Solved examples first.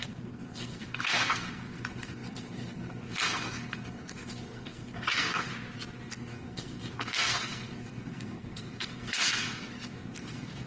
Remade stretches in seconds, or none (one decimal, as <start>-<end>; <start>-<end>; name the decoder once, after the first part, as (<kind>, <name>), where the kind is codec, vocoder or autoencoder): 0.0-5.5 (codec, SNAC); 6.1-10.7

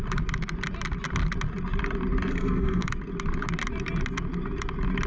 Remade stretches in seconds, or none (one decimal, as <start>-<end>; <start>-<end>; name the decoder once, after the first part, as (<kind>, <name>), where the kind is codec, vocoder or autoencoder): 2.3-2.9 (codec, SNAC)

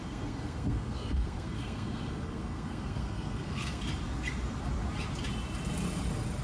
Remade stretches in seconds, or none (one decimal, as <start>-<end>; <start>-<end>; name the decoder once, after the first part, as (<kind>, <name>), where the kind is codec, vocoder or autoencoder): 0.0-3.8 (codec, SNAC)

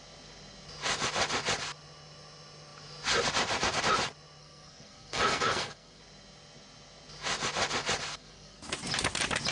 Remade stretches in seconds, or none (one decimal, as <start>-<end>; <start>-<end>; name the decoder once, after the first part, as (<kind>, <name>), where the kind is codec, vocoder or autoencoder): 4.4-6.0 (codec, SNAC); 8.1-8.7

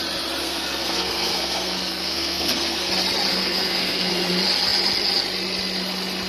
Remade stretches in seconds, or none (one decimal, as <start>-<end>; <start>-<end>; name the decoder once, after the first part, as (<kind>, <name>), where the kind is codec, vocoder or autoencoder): 0.4-2.9 (codec, SNAC); 3.3-4.1

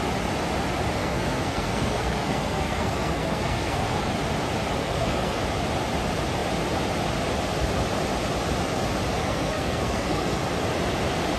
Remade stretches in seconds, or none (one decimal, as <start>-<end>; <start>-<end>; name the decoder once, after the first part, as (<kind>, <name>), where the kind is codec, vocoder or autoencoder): 1.0-4.1 (codec, SNAC); 4.8-5.4; 9.2-10.4

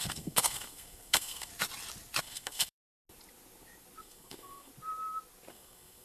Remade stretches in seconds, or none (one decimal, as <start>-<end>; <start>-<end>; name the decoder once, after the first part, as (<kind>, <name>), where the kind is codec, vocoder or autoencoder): 0.0-1.5 (codec, SNAC); 2.2-2.9; 4.0-4.7; 5.5-6.0

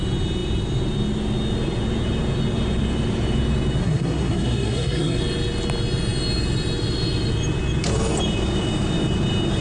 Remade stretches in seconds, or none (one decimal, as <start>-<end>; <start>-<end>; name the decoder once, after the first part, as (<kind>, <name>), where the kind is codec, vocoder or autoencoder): 3.8-5.2 (codec, SNAC)